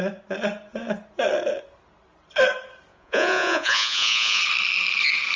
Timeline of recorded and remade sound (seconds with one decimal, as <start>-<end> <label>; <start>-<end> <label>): 0.0-2.9 recorded; 2.9-4.4 remade; 4.4-5.4 recorded